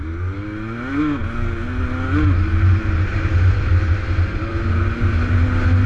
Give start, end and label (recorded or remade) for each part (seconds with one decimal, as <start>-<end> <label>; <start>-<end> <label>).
0.0-5.9 recorded